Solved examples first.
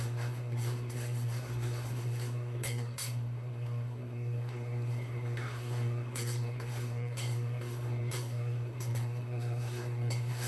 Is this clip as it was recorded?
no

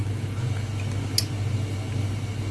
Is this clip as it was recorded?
yes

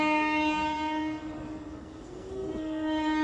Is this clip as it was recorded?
no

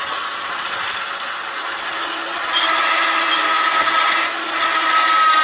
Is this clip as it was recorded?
yes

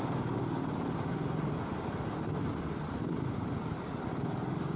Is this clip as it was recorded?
yes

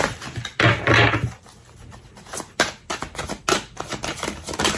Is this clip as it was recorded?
yes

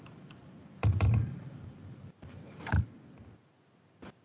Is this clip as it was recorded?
yes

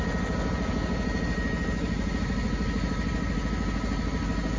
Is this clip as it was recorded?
yes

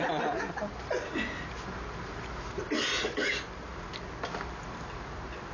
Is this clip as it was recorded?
yes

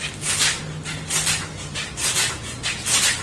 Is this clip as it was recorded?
yes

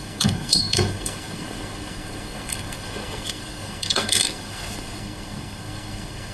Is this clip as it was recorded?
no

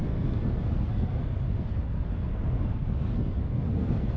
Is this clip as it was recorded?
no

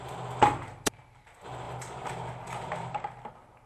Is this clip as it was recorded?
yes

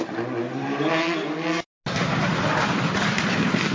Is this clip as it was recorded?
yes